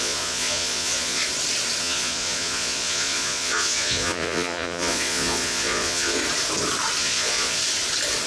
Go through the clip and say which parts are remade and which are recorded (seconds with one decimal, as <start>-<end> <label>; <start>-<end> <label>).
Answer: 0.0-1.2 remade; 1.2-1.8 recorded; 1.8-6.2 remade; 6.2-7.0 recorded; 7.0-7.6 remade; 7.6-8.3 recorded